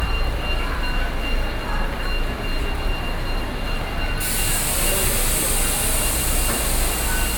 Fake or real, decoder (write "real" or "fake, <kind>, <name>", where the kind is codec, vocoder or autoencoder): real